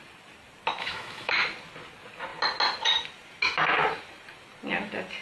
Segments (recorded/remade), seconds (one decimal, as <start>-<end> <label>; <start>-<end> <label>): 0.0-0.8 recorded; 0.8-1.3 remade; 1.3-5.2 recorded

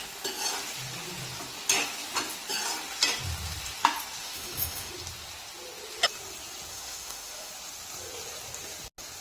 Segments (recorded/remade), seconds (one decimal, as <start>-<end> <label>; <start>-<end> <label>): 0.0-4.2 recorded; 4.2-4.9 remade; 4.9-6.7 recorded; 6.7-7.5 remade; 7.5-9.2 recorded

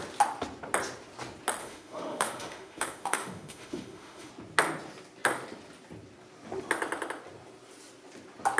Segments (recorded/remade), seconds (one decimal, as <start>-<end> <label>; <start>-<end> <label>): 0.0-1.6 recorded; 1.6-4.3 remade; 4.3-8.6 recorded

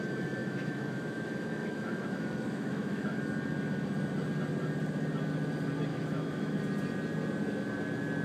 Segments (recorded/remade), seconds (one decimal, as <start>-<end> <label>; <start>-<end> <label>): 0.0-0.4 recorded; 0.4-3.2 remade; 3.2-5.9 recorded; 5.9-6.6 remade; 6.6-8.2 recorded

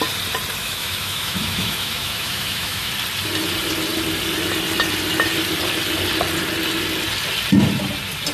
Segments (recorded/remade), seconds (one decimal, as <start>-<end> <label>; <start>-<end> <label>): 0.0-0.6 recorded; 0.6-2.9 remade; 2.9-8.3 recorded